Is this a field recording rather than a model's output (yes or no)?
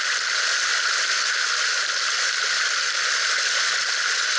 yes